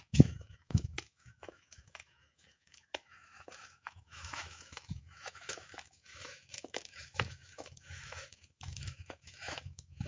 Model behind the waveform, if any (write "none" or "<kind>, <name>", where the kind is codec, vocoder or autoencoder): autoencoder, DAC-VAE